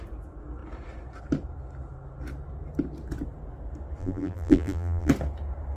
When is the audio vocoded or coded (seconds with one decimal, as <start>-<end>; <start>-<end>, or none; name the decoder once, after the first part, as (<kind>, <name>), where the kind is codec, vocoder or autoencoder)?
4.0-5.1 (vocoder, BigVGAN v2)